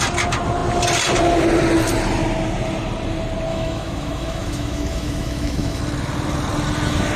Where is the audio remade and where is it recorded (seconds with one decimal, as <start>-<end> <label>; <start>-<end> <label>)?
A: 0.0-3.5 recorded; 3.5-5.8 remade; 5.8-7.2 recorded